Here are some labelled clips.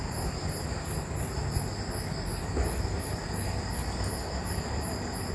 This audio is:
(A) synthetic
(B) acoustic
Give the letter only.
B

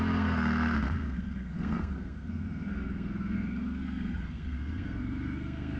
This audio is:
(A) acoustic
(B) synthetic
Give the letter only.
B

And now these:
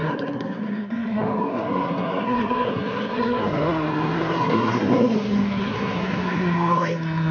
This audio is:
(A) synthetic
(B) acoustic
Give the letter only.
A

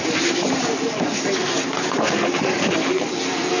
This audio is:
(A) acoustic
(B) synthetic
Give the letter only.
A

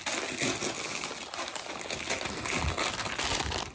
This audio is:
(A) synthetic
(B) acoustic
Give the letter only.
B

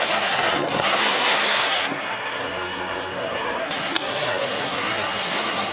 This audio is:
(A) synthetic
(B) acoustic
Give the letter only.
A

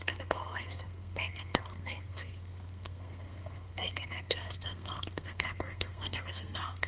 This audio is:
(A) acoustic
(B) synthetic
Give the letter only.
B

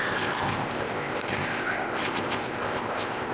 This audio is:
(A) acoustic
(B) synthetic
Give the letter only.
B